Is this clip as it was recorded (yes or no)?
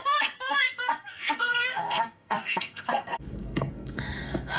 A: no